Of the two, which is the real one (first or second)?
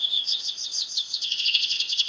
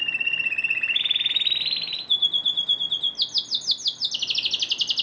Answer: second